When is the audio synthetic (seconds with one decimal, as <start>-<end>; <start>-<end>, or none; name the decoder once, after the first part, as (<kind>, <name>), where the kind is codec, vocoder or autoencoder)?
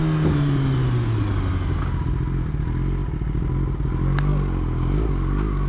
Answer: none